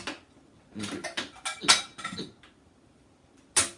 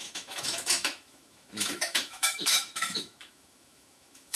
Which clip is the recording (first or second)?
first